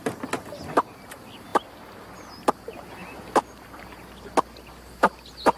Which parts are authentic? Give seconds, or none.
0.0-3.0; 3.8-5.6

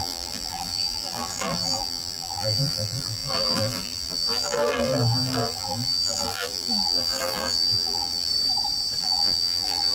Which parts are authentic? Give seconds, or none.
8.3-9.0

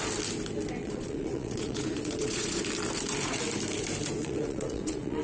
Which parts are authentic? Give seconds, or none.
0.0-0.8; 2.6-4.2